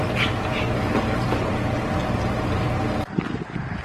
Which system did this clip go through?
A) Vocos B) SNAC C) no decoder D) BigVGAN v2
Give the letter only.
C